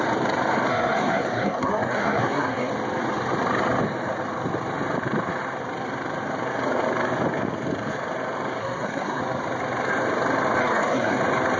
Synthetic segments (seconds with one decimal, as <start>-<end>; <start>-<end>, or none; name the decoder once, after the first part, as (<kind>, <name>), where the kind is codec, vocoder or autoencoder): 0.7-2.7 (codec, SNAC); 8.6-9.2; 10.6-11.2